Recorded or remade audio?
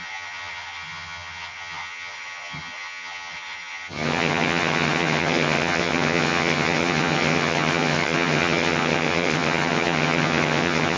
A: remade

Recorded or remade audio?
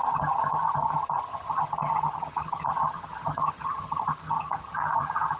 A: remade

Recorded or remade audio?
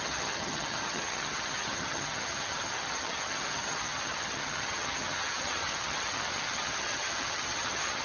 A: remade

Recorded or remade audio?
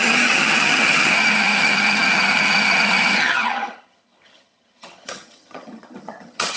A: remade